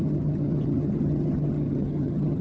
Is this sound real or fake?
fake